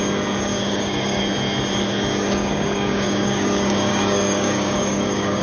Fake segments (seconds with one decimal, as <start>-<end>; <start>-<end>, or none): 0.5-1.2; 2.4-5.4